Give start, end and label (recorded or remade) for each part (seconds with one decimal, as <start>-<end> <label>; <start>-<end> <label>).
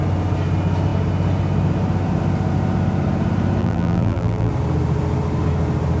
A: 0.0-3.6 recorded; 3.6-4.5 remade; 4.5-6.0 recorded